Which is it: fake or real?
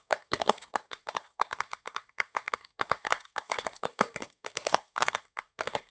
fake